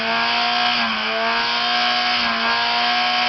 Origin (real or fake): real